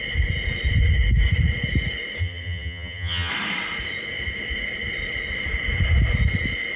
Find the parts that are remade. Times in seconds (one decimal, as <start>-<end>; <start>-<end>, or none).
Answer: 2.2-3.3